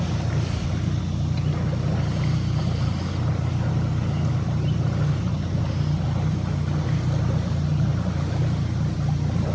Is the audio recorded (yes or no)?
yes